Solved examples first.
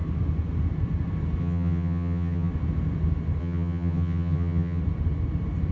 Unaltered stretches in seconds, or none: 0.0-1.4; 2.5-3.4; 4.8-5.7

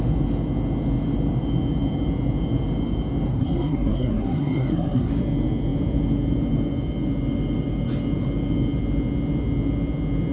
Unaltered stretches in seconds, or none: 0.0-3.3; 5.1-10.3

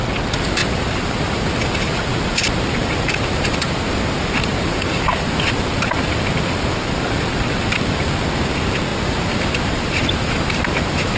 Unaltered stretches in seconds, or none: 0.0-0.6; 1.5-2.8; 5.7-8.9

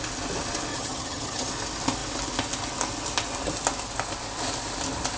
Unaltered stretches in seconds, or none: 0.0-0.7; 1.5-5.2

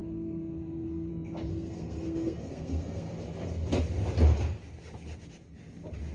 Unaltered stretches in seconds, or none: 1.1-1.5; 3.1-6.1

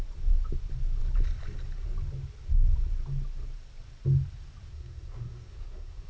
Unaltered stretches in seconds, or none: 0.0-4.7